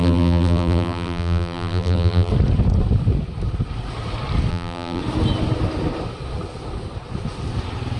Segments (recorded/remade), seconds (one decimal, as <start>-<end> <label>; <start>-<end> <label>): 0.0-2.3 remade; 2.3-4.5 recorded; 4.5-5.0 remade; 5.0-8.0 recorded